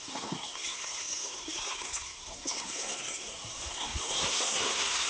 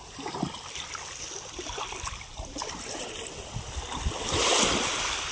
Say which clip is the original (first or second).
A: second